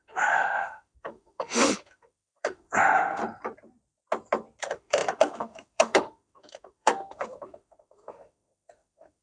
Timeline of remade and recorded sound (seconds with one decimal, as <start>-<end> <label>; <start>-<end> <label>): 0.0-3.2 remade; 3.2-4.6 recorded; 4.6-9.2 remade